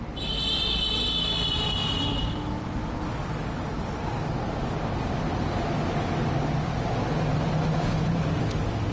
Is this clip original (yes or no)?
yes